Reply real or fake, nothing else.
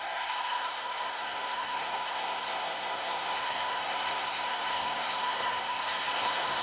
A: fake